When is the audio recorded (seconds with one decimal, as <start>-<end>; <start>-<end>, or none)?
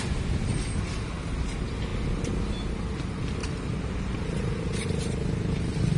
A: 0.0-3.4